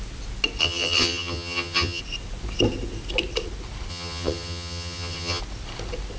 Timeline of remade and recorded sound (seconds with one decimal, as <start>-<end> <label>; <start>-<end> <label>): 0.0-0.6 recorded; 0.6-2.0 remade; 2.0-3.9 recorded; 3.9-5.4 remade; 5.4-6.2 recorded